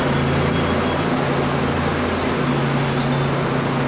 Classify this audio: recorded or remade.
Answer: recorded